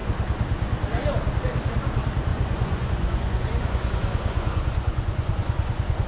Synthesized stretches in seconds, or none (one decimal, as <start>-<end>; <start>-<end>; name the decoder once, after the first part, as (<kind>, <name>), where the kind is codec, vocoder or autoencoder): 2.3-6.1 (vocoder, Vocos)